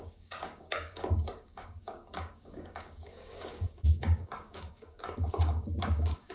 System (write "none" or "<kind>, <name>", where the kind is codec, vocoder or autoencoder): codec, DAC